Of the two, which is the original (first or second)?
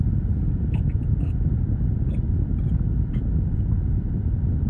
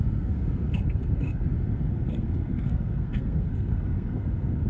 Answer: first